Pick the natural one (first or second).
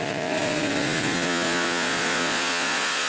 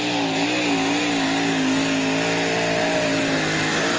second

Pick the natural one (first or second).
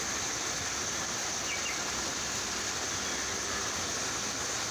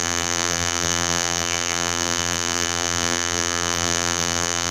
first